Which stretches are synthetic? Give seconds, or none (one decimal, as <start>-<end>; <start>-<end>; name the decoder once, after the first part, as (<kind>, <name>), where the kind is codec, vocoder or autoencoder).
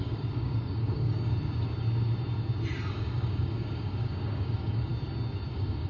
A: 0.0-1.3 (codec, DAC); 2.9-4.9; 5.5-5.9